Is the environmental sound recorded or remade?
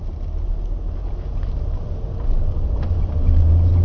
recorded